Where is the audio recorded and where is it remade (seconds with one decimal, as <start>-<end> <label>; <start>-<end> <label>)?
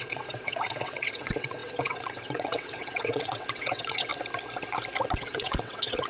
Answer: 0.0-4.1 remade; 4.1-5.0 recorded; 5.0-6.1 remade